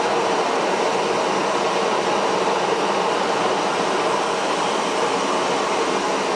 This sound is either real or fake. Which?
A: fake